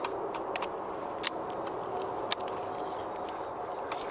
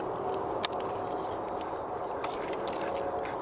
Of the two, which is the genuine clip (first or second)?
first